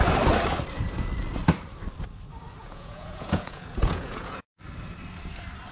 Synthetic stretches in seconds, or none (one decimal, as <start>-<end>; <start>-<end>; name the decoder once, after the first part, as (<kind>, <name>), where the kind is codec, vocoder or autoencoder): 2.6-4.6 (vocoder, Vocos)